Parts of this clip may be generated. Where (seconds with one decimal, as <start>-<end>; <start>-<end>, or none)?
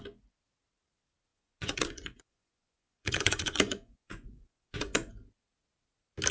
1.3-5.1